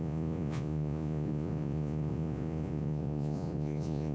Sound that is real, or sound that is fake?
fake